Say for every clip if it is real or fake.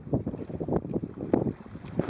real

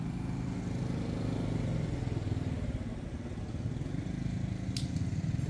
real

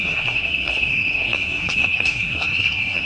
fake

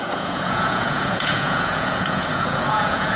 fake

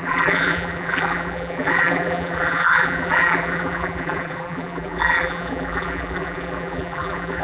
fake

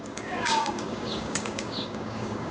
fake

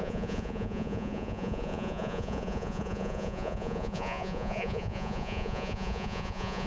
fake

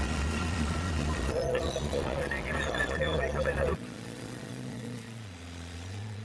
fake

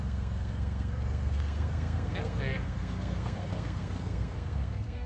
fake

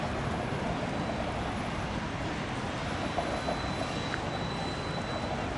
real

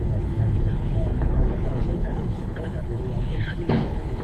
fake